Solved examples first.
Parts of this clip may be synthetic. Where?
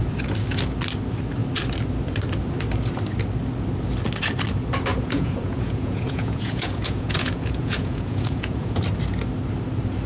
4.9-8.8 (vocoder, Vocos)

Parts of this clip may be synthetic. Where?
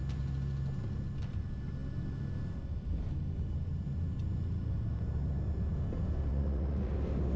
6.3-6.9 (vocoder, Vocos)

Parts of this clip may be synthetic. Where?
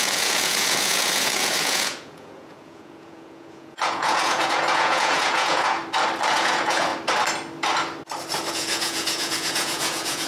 0.0-5.8 (vocoder, Vocos); 6.3-6.9; 8.5-10.3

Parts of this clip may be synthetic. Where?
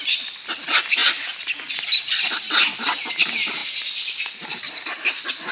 none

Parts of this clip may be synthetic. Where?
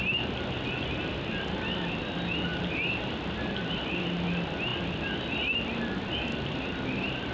none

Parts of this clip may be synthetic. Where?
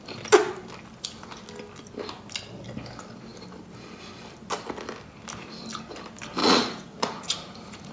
6.4-7.9 (vocoder, Vocos)